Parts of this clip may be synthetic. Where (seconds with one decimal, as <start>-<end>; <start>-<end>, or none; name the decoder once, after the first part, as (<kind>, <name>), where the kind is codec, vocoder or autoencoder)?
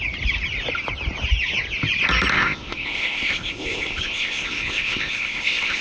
2.3-5.8 (codec, ZipCodec)